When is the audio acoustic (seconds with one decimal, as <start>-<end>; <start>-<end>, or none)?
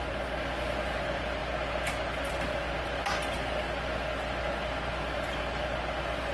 0.0-6.3